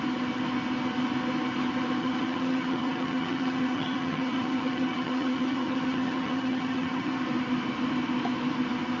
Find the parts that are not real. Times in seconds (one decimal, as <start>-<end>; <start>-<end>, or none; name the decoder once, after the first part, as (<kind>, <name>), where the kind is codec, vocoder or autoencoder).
2.0-7.2 (vocoder, HiFi-GAN)